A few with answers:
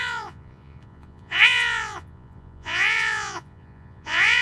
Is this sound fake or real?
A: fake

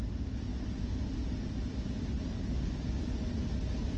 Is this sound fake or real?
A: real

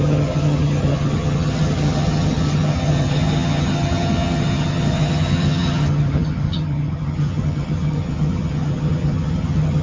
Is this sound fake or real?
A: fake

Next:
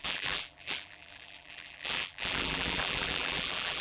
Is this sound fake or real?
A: fake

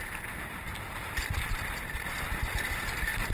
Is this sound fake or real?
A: real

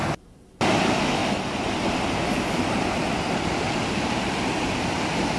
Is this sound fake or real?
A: real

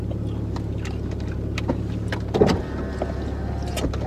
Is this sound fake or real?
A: real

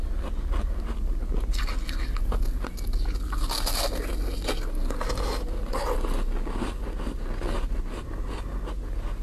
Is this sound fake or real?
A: real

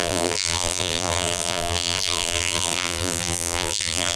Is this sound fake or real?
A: fake